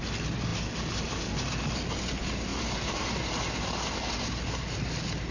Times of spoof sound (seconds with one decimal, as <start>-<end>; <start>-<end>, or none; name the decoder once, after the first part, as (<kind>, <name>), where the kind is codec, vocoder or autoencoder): 2.5-3.3 (vocoder, BigVGAN v2)